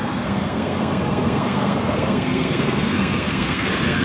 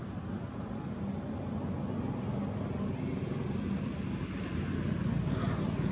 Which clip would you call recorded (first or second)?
second